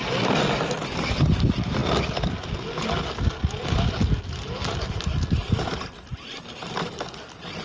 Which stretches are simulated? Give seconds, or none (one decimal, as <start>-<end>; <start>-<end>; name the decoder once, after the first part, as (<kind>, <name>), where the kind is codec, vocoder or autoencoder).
none